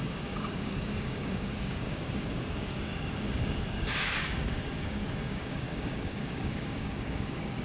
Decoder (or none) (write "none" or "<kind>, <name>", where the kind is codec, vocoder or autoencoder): codec, DAC